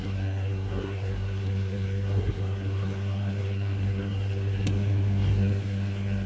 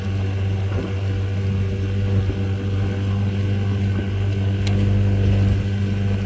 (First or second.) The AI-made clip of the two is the first